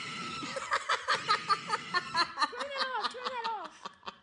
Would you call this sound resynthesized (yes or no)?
no